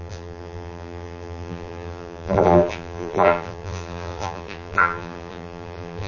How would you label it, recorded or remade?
remade